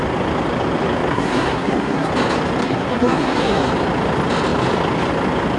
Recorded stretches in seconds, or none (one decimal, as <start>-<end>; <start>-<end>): 0.0-1.1; 2.1-2.6; 3.7-5.6